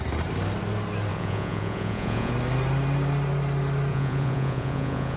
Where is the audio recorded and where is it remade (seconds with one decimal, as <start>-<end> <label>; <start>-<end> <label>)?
0.0-1.1 recorded; 1.1-2.3 remade; 2.3-3.9 recorded; 3.9-5.2 remade